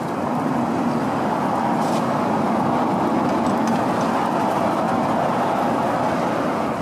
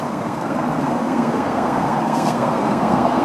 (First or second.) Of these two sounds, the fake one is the second